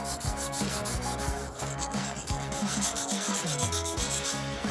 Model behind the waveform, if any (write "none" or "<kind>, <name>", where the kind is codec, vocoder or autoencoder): codec, SNAC